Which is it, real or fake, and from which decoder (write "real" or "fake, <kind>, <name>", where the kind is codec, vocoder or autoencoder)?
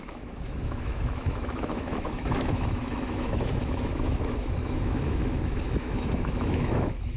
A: fake, autoencoder, DAC-VAE